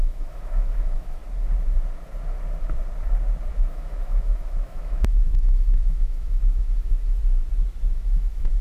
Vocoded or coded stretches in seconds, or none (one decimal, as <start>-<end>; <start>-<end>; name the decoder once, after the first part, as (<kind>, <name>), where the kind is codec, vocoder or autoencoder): 0.0-1.2 (autoencoder, DAC-VAE); 3.5-7.2; 7.9-8.6